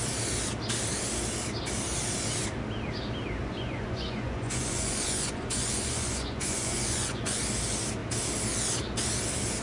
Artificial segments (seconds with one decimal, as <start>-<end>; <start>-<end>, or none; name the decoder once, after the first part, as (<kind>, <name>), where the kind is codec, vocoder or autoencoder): 3.4-7.4 (vocoder, Vocos)